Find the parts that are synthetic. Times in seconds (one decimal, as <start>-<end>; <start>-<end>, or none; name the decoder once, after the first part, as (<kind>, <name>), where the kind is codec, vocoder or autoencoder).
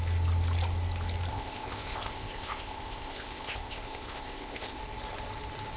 1.3-4.8 (codec, ZipCodec)